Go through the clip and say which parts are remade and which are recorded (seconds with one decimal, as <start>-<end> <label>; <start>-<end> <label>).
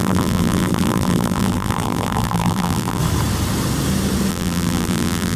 0.0-3.0 remade; 3.0-4.3 recorded; 4.3-5.4 remade